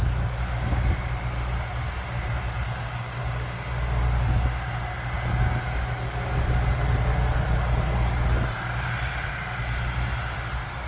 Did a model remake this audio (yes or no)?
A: no